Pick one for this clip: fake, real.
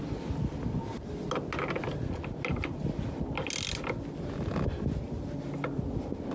real